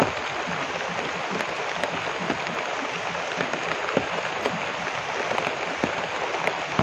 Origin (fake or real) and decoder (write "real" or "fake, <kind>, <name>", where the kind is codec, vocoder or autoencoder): real